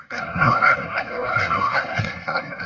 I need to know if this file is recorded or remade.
remade